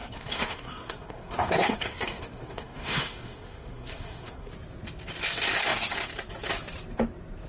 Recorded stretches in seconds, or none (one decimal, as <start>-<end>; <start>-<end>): 4.5-7.5